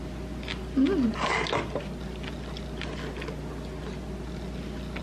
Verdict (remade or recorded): recorded